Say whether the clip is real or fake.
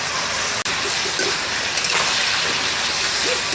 real